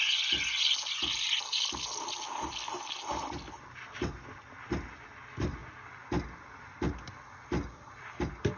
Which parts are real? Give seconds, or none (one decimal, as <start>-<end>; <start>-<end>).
0.0-8.6